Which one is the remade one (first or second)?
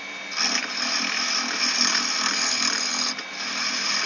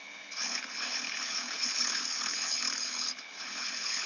second